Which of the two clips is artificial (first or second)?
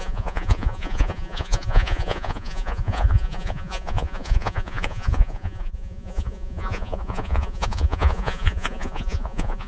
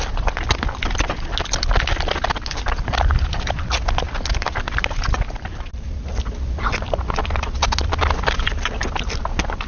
first